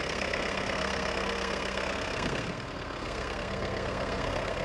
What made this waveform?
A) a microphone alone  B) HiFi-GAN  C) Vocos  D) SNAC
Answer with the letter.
D